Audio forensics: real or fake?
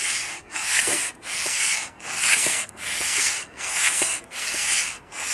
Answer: fake